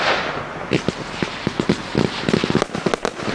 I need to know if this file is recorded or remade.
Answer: recorded